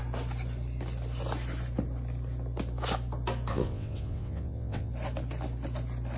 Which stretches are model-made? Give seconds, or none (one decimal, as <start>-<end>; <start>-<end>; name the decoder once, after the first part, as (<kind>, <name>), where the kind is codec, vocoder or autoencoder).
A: 3.5-4.9 (vocoder, WaveNeXt)